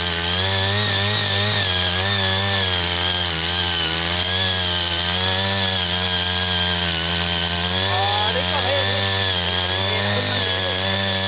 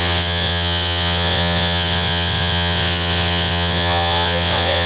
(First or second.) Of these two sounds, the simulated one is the second